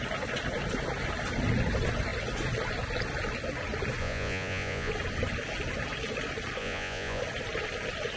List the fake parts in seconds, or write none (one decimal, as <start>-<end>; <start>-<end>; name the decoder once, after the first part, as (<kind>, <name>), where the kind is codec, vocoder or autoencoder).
4.0-4.9 (vocoder, Vocos); 6.6-7.2